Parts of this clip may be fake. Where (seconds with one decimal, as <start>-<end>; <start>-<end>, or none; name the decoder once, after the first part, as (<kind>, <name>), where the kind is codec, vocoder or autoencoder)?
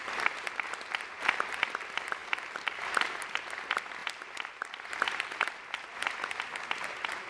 none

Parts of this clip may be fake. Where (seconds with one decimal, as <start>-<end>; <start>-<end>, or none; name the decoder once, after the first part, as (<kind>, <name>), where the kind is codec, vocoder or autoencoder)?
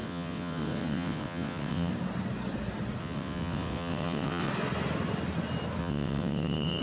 0.0-1.9 (vocoder, WaveNeXt); 3.0-4.5; 5.8-6.8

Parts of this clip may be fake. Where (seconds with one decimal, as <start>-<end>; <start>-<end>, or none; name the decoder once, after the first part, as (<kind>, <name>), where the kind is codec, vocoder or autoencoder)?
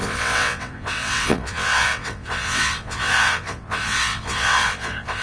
0.0-5.2 (vocoder, WaveNeXt)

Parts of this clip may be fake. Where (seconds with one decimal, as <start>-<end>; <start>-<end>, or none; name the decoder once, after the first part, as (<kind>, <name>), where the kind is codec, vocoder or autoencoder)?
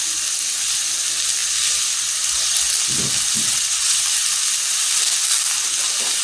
3.4-4.0 (vocoder, WaveNeXt)